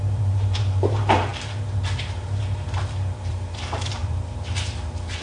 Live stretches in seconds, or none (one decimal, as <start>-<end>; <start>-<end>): none